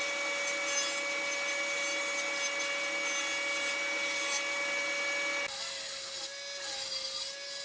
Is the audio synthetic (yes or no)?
no